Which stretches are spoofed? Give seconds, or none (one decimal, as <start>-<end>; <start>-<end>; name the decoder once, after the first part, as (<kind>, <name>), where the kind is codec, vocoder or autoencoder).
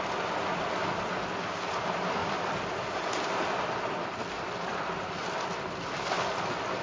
4.7-5.5 (vocoder, BigVGAN v2)